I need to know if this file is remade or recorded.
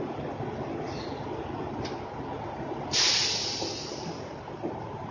recorded